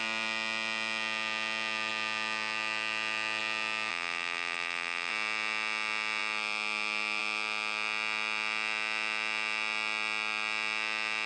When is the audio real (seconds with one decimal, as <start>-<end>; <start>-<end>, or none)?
0.0-3.9; 5.1-11.3